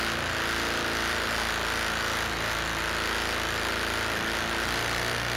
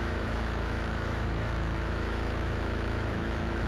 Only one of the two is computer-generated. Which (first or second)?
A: second